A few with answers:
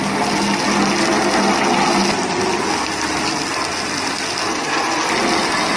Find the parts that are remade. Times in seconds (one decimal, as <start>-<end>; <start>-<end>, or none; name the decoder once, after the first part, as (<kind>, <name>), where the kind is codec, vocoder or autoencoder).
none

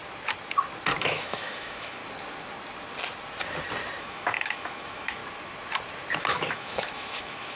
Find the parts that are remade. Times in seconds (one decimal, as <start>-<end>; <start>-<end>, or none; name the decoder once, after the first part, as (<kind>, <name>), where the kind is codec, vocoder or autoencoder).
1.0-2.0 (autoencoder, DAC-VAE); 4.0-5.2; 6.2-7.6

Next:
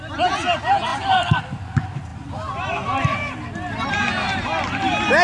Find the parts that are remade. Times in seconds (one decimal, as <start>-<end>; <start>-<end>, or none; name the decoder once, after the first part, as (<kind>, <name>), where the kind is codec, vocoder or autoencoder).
0.9-1.4 (vocoder, BigVGAN v2); 2.1-3.9

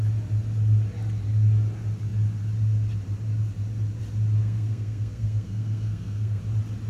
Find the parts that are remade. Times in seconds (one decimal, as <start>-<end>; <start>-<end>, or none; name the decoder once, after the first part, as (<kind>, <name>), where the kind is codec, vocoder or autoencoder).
4.4-6.4 (codec, SNAC)

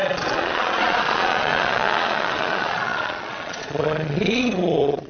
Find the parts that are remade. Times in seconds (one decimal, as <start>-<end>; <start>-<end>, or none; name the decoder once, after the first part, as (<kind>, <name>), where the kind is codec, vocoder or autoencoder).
0.0-5.1 (vocoder, Vocos)

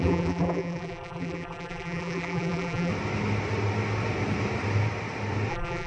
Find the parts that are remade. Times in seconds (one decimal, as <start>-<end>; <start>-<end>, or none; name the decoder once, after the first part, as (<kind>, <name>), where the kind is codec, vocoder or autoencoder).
0.0-2.9 (vocoder, BigVGAN v2); 5.5-5.9

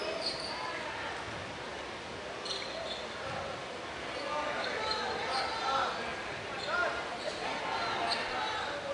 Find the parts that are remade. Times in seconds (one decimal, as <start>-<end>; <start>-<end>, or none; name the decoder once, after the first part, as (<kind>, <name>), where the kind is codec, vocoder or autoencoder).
none